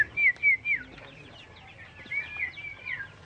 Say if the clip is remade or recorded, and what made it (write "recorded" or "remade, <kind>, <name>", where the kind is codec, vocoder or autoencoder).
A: recorded